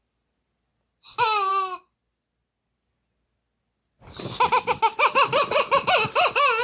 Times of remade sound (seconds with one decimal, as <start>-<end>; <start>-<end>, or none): none